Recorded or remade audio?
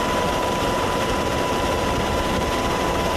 remade